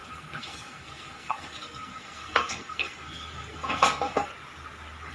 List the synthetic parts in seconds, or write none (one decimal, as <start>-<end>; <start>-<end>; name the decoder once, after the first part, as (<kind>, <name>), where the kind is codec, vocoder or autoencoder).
0.0-4.3 (codec, SNAC)